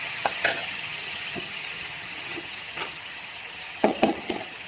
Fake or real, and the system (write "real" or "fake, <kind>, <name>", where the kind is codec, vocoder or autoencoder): fake, vocoder, HiFi-GAN